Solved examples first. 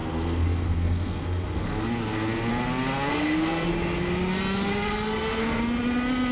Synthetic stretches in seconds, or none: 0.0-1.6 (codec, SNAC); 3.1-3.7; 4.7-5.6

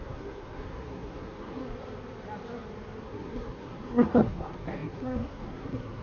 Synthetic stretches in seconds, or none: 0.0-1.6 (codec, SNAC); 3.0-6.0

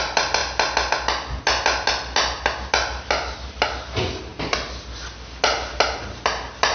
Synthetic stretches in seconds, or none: none

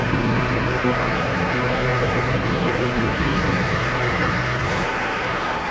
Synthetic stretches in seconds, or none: 0.0-5.7 (codec, SNAC)

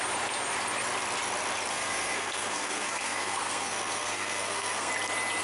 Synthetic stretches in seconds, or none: 1.7-4.9 (codec, SNAC)